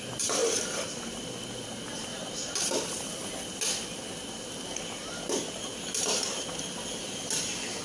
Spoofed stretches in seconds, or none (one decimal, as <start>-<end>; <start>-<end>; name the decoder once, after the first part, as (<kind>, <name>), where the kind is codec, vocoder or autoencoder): none